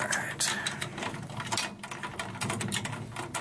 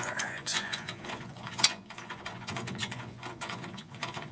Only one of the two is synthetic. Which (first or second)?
second